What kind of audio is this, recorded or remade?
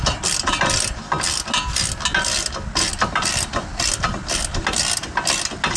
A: recorded